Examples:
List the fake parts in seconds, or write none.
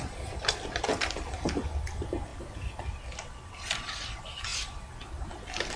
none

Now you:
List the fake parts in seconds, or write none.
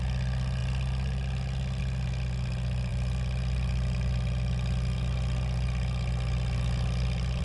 0.6-1.8; 2.9-7.4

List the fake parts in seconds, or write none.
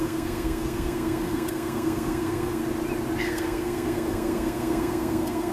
0.0-2.6; 3.2-5.5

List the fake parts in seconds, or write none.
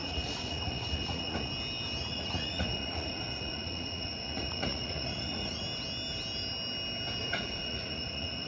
0.0-1.5; 2.0-5.6; 7.2-8.5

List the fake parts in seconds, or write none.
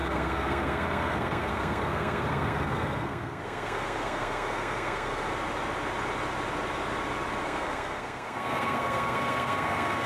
0.0-5.3; 7.4-10.1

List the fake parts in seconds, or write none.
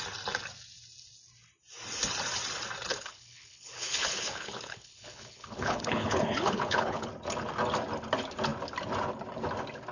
2.9-7.1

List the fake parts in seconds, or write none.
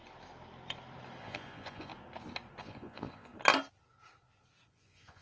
1.2-1.9; 2.6-3.3; 4.7-5.2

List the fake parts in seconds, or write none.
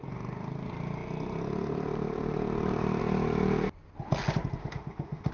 4.6-5.3